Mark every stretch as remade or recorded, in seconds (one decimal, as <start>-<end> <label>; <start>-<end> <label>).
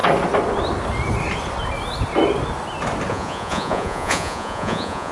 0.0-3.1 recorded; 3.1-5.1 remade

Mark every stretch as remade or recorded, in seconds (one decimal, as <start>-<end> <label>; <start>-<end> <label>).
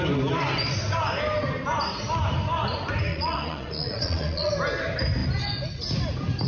0.0-3.1 recorded; 3.1-4.5 remade; 4.5-6.5 recorded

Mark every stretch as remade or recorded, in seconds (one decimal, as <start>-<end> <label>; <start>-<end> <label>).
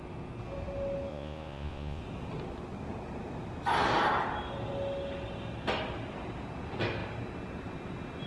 0.0-1.1 recorded; 1.1-2.0 remade; 2.0-8.3 recorded